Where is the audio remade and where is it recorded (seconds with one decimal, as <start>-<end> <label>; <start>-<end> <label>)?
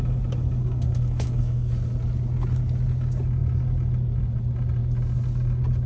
0.0-0.6 recorded; 0.6-1.7 remade; 1.7-5.9 recorded